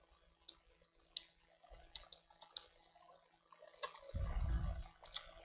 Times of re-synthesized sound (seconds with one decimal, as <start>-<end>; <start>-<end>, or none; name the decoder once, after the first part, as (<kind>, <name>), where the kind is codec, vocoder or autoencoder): none